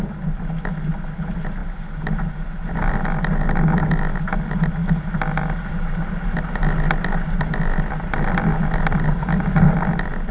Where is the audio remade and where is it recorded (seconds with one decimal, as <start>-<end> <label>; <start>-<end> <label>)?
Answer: 0.0-10.3 recorded